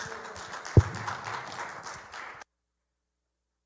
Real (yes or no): yes